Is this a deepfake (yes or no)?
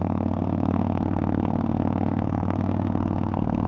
yes